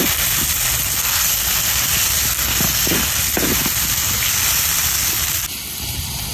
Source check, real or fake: real